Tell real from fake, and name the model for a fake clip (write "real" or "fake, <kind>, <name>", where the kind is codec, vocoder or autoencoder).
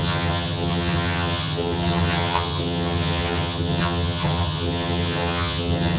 fake, vocoder, HiFi-GAN